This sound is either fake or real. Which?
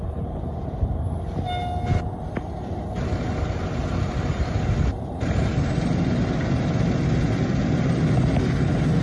real